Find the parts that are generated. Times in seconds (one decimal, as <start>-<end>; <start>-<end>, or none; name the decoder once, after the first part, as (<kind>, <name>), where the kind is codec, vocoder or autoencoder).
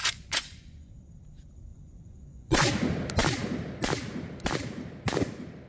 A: 0.0-0.9 (vocoder, Vocos); 1.7-2.7